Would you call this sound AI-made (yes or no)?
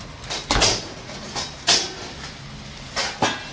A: no